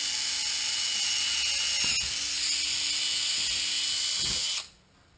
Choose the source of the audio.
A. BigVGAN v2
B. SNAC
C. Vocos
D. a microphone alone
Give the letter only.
D